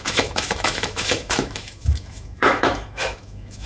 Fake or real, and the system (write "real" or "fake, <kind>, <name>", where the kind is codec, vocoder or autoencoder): fake, autoencoder, DAC-VAE